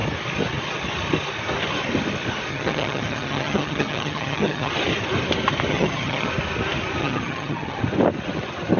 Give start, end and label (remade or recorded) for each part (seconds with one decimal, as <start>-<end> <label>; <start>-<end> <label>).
0.0-2.5 recorded; 2.5-4.7 remade; 4.7-5.7 recorded; 5.7-6.3 remade; 6.3-7.0 recorded; 7.0-7.8 remade; 7.8-8.8 recorded